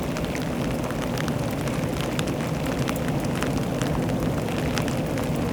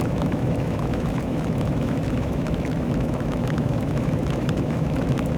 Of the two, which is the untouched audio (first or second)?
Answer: first